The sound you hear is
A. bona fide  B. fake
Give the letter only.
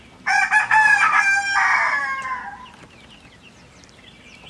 A